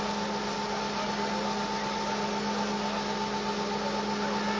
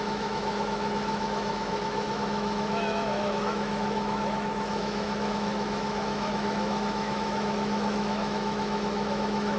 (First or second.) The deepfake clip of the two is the second